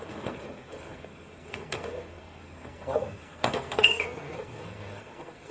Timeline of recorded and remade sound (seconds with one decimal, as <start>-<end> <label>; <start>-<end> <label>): 0.0-5.5 remade